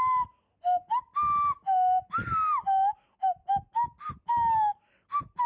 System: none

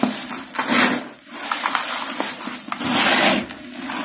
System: none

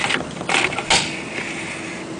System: none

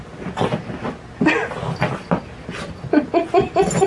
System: none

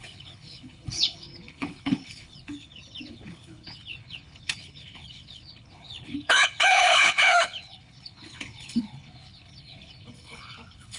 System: codec, HILCodec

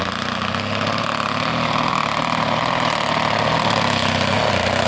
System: none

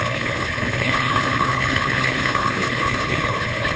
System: codec, HILCodec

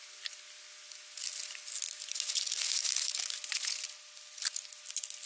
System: none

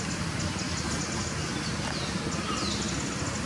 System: none